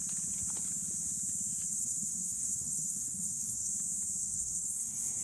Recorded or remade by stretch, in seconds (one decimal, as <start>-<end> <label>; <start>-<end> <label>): 0.0-1.7 recorded; 1.7-3.7 remade; 3.7-4.2 recorded; 4.2-5.2 remade